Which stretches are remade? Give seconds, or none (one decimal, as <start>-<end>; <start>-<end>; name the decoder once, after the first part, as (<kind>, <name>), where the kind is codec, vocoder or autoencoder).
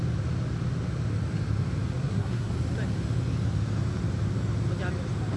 2.0-2.5 (codec, SNAC)